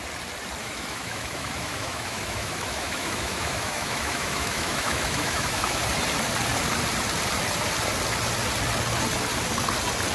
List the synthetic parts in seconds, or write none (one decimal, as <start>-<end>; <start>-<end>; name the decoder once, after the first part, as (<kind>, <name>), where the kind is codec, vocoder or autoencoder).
0.6-5.8 (autoencoder, DAC-VAE)